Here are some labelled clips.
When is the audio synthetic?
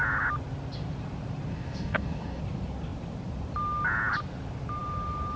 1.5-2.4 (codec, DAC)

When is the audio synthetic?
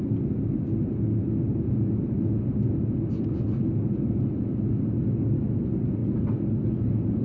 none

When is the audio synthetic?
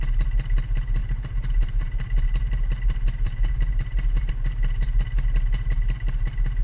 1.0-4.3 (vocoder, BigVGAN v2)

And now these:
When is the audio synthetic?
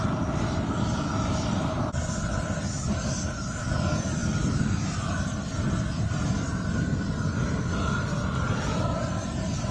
none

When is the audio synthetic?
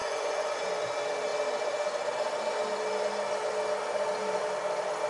0.0-0.7 (vocoder, Vocos)